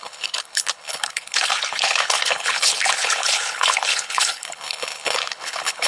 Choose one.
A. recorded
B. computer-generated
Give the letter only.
B